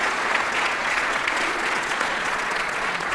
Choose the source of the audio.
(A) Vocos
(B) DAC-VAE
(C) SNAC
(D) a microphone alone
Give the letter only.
A